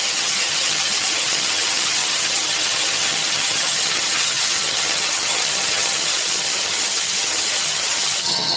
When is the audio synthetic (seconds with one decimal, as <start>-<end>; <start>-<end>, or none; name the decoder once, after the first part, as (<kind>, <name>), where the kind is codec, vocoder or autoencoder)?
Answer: 0.0-8.6 (vocoder, HiFi-GAN)